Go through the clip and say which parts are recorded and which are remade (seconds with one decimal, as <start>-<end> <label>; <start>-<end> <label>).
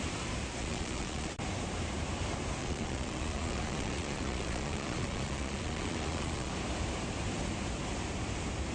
0.0-0.6 recorded; 0.6-1.3 remade; 1.3-2.6 recorded; 2.6-6.5 remade; 6.5-8.7 recorded